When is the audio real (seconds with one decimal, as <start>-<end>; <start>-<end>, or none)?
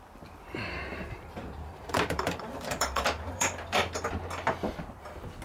0.0-0.9; 4.1-5.4